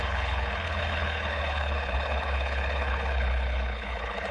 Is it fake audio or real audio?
fake